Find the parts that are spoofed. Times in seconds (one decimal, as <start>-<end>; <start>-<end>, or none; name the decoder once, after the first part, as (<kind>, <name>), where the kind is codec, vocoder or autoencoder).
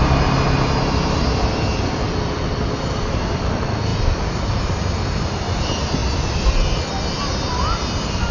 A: none